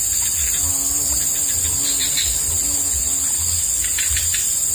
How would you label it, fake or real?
real